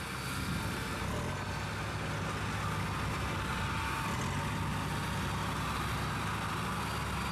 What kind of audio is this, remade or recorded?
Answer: recorded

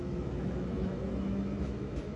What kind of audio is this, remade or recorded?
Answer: remade